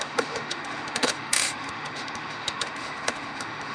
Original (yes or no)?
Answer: no